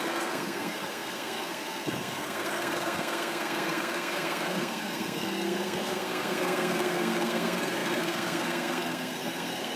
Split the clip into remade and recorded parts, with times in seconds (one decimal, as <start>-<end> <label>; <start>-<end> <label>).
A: 0.0-9.8 remade